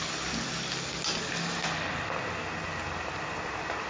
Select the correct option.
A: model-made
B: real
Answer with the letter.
B